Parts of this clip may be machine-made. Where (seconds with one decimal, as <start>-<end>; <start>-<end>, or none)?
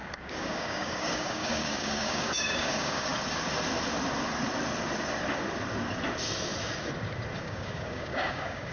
0.0-3.1; 7.4-8.7